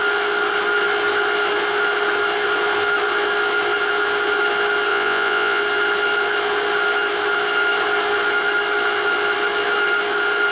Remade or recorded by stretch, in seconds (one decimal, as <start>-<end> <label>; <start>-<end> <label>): 0.0-4.9 recorded; 4.9-5.6 remade; 5.6-10.5 recorded